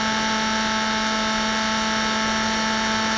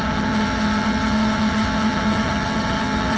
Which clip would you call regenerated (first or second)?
second